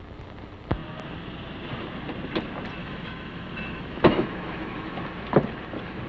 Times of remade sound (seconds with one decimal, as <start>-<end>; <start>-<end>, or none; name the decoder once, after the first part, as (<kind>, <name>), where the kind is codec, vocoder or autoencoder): 2.8-5.0 (autoencoder, DAC-VAE)

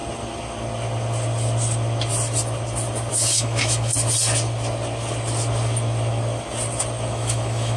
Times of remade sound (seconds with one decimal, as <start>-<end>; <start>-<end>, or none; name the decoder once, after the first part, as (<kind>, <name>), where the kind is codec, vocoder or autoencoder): 3.1-3.9 (autoencoder, DAC-VAE); 7.1-7.8

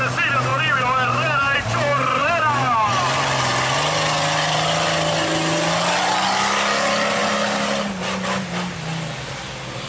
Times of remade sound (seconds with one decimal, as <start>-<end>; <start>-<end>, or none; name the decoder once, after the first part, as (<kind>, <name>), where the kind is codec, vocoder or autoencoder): none